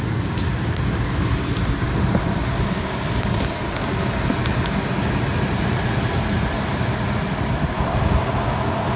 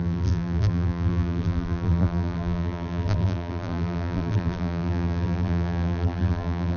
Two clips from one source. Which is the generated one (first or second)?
second